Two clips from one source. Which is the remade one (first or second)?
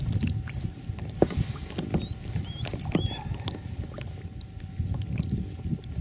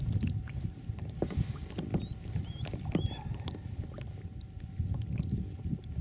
second